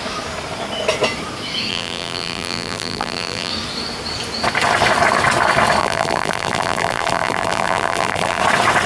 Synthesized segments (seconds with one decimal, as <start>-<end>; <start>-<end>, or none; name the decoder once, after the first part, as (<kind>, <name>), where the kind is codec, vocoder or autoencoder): 1.7-3.5 (vocoder, BigVGAN v2); 5.8-8.4